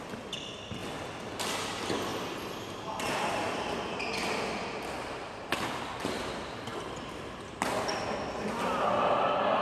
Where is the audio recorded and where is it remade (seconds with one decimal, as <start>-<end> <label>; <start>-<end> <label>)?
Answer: 0.0-9.6 recorded